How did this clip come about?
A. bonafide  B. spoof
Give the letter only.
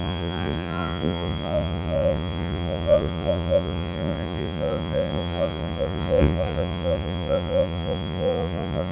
B